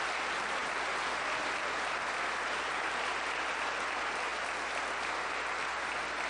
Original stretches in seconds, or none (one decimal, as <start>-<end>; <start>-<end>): 0.0-6.3